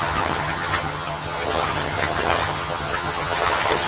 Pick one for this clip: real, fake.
fake